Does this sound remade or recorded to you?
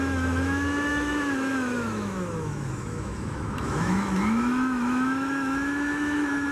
remade